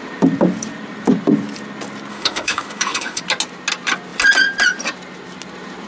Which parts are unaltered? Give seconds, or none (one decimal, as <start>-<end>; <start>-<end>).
0.0-2.1; 3.2-5.9